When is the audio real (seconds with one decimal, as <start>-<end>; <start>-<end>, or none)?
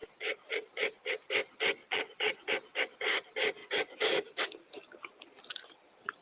1.3-1.8; 2.5-6.2